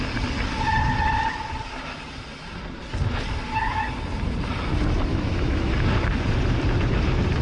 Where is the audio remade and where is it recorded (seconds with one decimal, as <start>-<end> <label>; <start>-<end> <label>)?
0.0-5.1 recorded; 5.1-5.7 remade; 5.7-7.4 recorded